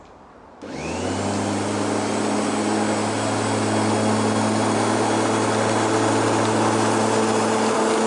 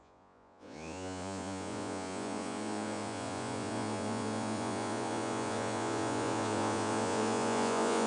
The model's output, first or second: second